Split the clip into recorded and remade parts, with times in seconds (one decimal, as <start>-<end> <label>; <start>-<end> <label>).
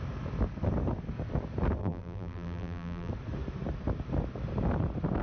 0.0-1.8 recorded; 1.8-3.1 remade; 3.1-5.2 recorded